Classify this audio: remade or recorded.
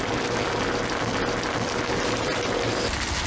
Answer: recorded